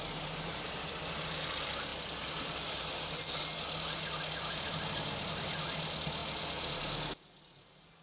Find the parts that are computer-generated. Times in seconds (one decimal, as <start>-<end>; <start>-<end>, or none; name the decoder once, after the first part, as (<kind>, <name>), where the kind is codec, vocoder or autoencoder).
none